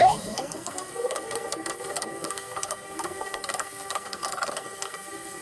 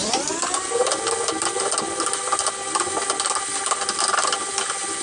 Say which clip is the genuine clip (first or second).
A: second